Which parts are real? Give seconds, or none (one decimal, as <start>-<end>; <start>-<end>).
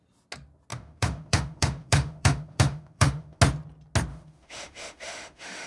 0.0-0.7; 3.4-4.1